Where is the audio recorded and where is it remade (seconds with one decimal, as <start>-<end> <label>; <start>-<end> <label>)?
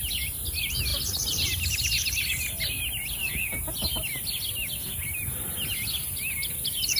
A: 0.0-7.0 recorded